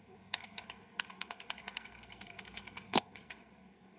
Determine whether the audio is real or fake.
fake